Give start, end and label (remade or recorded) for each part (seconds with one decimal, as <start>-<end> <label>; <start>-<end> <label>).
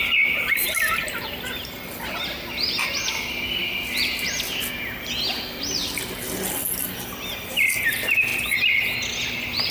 0.0-9.7 recorded